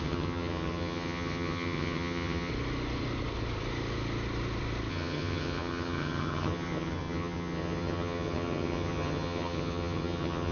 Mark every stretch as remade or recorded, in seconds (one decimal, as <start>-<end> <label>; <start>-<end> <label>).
0.0-2.5 remade; 2.5-4.9 recorded; 4.9-10.5 remade